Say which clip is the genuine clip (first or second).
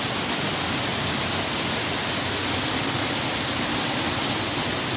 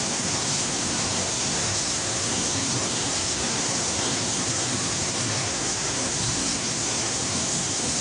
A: first